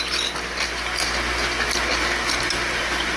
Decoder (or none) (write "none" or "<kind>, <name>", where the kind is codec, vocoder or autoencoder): none